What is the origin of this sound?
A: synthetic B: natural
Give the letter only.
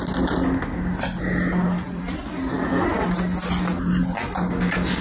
B